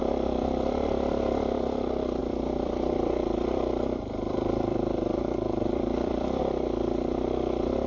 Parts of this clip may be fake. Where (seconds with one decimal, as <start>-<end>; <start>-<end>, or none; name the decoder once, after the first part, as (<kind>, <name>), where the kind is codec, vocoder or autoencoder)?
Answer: 2.2-6.4 (vocoder, BigVGAN v2)